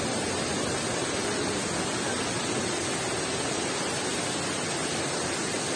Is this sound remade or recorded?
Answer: recorded